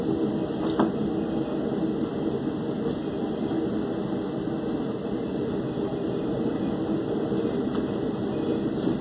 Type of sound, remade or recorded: recorded